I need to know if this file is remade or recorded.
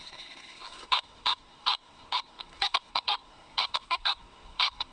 remade